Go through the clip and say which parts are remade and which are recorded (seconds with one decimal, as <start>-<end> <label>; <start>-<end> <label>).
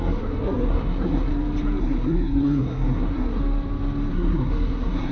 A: 0.0-1.3 remade; 1.3-1.8 recorded; 1.8-3.4 remade; 3.4-4.1 recorded; 4.1-5.1 remade